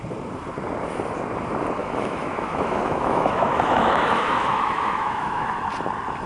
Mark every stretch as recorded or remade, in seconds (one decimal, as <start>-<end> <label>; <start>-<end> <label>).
0.0-1.8 recorded; 1.8-5.6 remade; 5.6-6.3 recorded